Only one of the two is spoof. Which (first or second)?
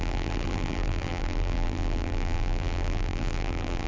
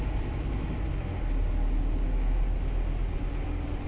first